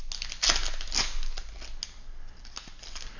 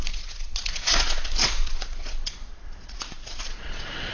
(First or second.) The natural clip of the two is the first